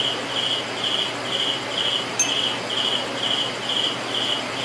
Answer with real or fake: real